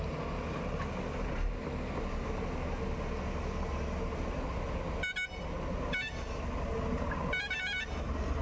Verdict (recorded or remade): recorded